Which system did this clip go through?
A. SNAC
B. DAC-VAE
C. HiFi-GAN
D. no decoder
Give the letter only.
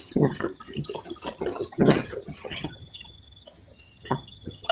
C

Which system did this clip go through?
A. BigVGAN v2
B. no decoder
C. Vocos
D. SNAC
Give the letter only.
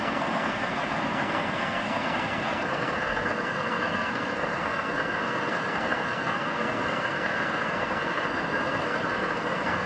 D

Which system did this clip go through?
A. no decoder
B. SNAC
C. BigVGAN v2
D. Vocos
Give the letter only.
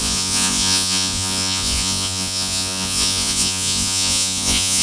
D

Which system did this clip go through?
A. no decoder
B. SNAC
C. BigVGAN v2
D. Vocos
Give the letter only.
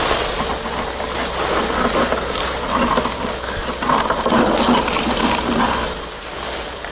A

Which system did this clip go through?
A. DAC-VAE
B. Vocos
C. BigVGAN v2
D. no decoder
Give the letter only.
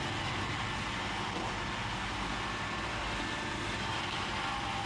D